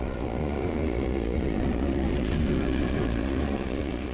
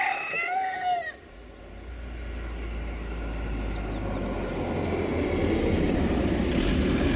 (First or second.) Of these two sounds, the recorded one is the second